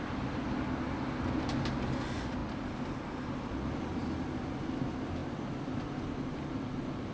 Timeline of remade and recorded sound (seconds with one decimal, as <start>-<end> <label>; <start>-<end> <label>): 0.0-7.1 recorded